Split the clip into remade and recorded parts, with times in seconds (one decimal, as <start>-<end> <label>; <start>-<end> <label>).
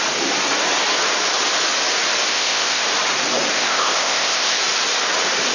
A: 0.0-2.3 recorded; 2.3-2.8 remade; 2.8-3.5 recorded; 3.5-4.6 remade; 4.6-5.5 recorded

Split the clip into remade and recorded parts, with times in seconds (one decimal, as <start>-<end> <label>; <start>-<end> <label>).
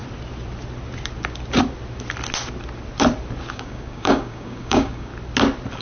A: 0.0-3.5 recorded; 3.5-5.1 remade; 5.1-5.8 recorded